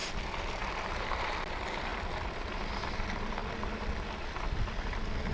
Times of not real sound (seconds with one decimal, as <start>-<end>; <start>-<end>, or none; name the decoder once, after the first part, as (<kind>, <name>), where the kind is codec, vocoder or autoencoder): 0.7-1.9 (vocoder, BigVGAN v2); 2.7-3.4; 4.2-5.3